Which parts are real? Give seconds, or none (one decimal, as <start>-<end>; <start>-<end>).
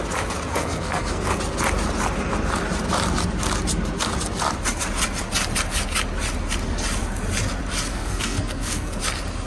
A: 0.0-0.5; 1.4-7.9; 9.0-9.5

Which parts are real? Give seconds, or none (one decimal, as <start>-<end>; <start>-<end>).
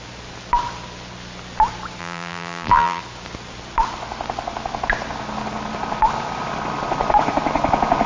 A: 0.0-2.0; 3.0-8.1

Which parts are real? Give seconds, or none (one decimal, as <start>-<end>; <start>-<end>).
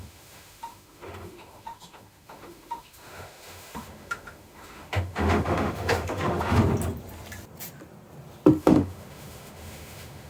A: 6.6-8.6